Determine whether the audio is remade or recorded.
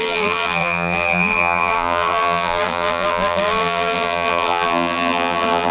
remade